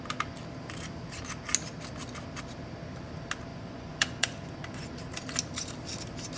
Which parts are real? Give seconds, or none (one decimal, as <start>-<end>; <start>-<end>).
0.0-3.5; 5.0-6.4